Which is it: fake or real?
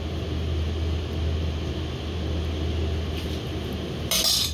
real